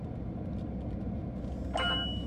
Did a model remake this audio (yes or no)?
no